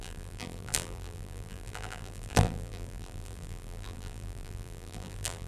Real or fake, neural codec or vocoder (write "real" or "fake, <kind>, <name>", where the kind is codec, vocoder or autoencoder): fake, vocoder, BigVGAN v2